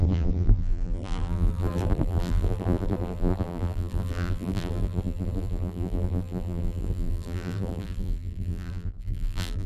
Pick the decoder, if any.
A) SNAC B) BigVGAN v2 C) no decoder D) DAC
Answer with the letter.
B